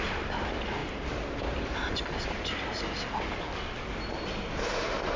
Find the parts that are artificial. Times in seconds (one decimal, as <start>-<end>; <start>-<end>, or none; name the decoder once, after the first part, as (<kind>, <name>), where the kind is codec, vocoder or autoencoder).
none